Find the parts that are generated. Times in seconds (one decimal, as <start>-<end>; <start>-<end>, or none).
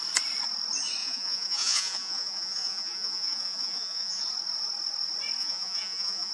1.0-4.2; 5.4-6.3